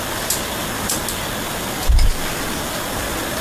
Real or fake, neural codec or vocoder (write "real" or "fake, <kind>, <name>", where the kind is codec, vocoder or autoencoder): real